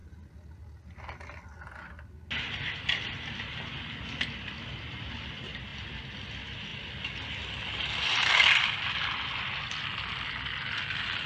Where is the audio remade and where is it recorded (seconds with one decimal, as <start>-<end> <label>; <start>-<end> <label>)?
0.0-11.3 recorded